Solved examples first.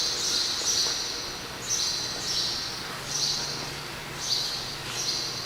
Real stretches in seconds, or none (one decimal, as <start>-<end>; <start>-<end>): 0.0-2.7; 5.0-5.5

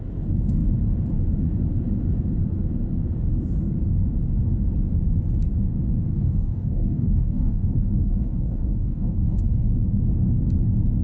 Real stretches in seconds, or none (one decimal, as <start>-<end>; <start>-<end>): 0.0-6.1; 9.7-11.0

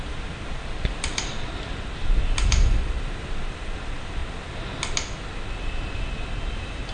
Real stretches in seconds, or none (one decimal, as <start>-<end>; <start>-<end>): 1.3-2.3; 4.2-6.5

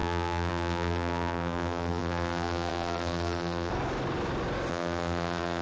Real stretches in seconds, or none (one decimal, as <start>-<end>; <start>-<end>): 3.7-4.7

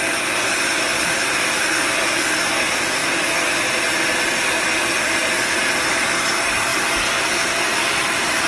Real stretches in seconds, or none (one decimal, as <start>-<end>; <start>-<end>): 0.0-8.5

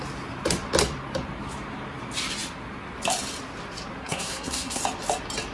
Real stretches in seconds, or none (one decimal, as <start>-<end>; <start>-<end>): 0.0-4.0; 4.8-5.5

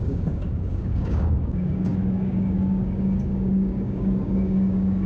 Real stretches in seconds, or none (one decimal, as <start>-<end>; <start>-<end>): none

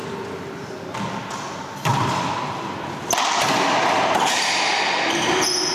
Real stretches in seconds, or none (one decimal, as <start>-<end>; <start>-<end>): 0.0-5.7